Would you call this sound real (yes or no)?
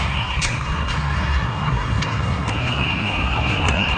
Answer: no